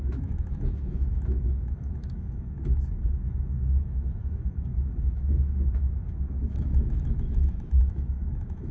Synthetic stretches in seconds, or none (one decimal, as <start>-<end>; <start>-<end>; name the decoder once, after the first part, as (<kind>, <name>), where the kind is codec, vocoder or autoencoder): 0.0-8.7 (autoencoder, DAC-VAE)